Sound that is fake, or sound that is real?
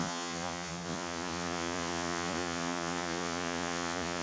fake